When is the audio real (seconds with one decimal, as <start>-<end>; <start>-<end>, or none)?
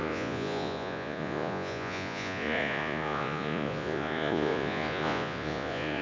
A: none